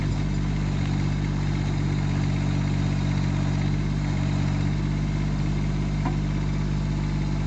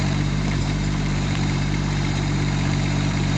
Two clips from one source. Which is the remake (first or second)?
second